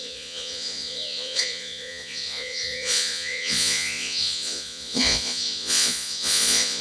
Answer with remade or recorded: remade